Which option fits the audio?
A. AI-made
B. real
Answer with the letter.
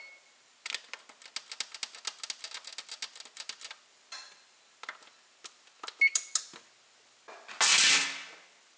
B